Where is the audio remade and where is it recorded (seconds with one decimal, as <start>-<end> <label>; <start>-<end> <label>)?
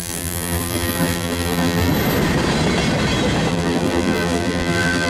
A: 0.0-1.9 remade; 1.9-3.5 recorded; 3.5-5.1 remade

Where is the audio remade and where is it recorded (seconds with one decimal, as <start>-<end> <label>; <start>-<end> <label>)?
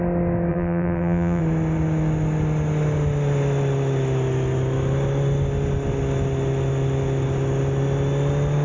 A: 0.0-0.5 recorded; 0.5-1.4 remade; 1.4-8.6 recorded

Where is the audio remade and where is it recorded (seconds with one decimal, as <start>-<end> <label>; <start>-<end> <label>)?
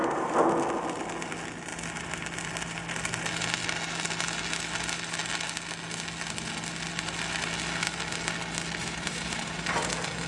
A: 0.0-0.5 remade; 0.5-8.8 recorded; 8.8-9.9 remade; 9.9-10.3 recorded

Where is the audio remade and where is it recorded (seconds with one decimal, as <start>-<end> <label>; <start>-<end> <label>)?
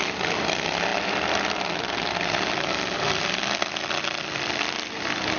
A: 0.0-5.4 recorded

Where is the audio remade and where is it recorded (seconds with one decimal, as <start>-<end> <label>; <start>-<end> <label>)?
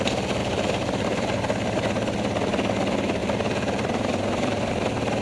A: 0.0-0.4 recorded; 0.4-1.4 remade; 1.4-3.2 recorded; 3.2-4.7 remade; 4.7-5.2 recorded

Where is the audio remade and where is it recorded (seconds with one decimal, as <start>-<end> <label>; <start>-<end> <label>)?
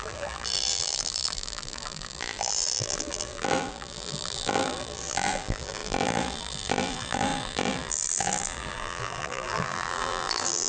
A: 0.0-10.7 remade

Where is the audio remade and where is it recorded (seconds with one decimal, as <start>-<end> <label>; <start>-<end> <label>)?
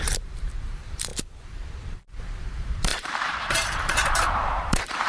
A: 0.0-1.1 remade; 1.1-2.2 recorded; 2.2-5.1 remade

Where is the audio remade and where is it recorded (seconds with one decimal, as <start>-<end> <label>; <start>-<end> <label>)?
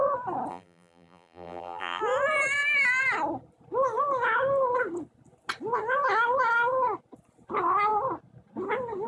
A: 0.0-0.5 recorded; 0.5-2.0 remade; 2.0-9.1 recorded